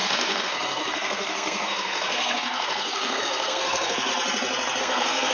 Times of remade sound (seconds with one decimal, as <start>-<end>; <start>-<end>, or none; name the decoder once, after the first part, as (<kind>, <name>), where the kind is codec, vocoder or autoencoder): 0.0-4.1 (codec, SNAC); 4.8-5.3